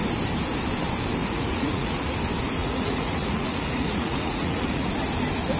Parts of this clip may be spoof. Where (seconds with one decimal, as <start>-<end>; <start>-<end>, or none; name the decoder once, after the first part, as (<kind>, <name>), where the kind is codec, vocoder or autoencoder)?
1.2-2.2 (vocoder, Vocos); 2.6-4.9